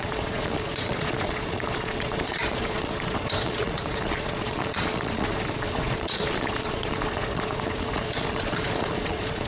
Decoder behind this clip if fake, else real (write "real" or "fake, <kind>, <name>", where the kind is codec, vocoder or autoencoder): fake, vocoder, Vocos